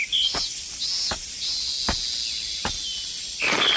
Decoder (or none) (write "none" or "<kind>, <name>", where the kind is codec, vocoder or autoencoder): none